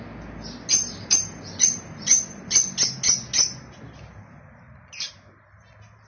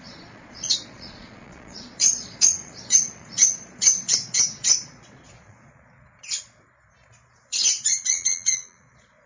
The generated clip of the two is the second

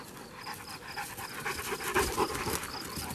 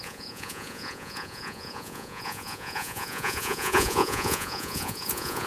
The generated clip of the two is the second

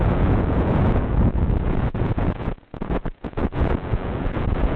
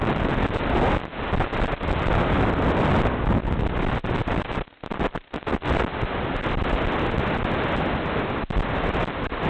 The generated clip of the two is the first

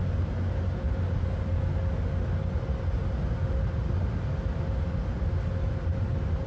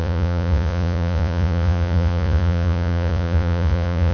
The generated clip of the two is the second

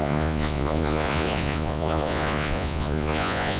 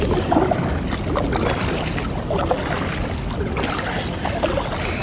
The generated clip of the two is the first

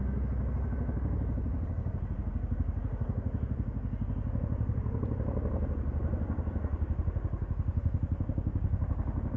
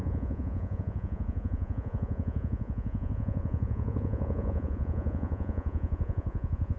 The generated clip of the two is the second